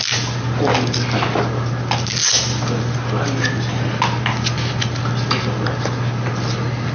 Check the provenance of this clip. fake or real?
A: real